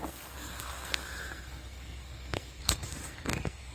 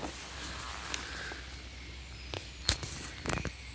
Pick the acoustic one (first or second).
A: second